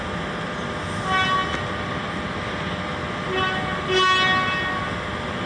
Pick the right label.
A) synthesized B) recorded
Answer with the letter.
B